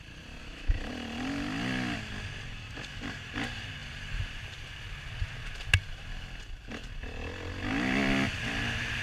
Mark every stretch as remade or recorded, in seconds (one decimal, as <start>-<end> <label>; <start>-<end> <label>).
0.0-0.4 recorded; 0.4-0.9 remade; 0.9-9.0 recorded